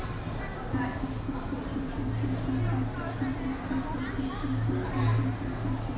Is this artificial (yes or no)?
no